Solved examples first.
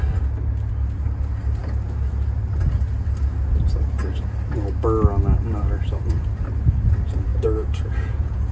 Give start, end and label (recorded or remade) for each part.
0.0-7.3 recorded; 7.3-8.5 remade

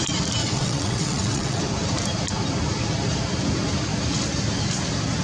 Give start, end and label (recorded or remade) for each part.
0.0-0.4 recorded; 0.4-1.6 remade; 1.6-5.2 recorded

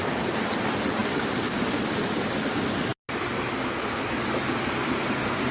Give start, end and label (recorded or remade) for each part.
0.0-5.5 recorded

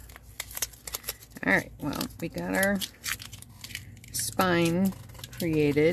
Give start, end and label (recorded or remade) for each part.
0.0-5.9 recorded

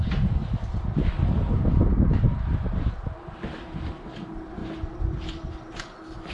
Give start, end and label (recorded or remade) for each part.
0.0-6.3 recorded

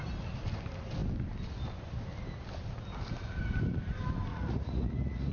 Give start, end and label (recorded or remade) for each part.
0.0-4.3 recorded; 4.3-5.3 remade